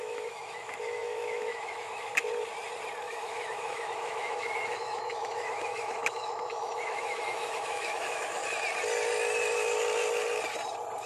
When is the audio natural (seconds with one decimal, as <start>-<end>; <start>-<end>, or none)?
2.1-3.0; 8.4-11.1